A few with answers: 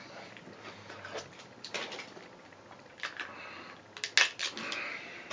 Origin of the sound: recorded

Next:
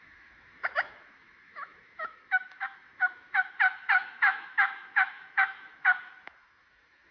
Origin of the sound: remade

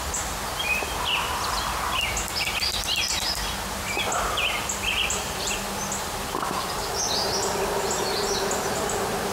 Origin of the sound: recorded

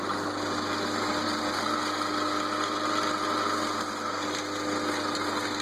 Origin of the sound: recorded